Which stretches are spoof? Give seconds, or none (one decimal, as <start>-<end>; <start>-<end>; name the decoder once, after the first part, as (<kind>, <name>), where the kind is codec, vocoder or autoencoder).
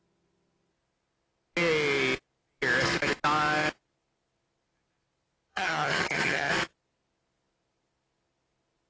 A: 5.5-6.5 (vocoder, HiFi-GAN)